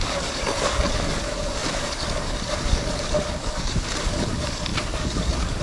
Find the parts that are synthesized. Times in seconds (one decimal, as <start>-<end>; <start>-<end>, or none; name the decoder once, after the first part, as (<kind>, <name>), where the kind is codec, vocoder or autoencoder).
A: 0.0-5.6 (codec, DAC)